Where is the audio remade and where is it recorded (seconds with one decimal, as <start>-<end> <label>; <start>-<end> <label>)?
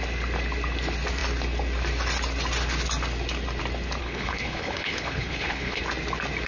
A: 0.0-4.0 recorded; 4.0-5.8 remade; 5.8-6.5 recorded